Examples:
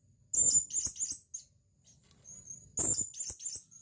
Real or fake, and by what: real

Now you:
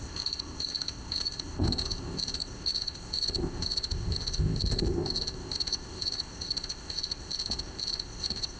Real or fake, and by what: fake, codec, ZipCodec